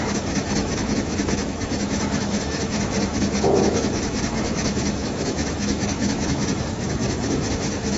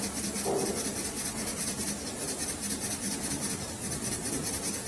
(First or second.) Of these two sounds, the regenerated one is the first